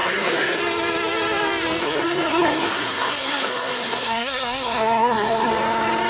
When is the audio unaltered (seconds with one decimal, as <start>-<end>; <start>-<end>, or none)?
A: 0.6-1.8; 5.5-6.1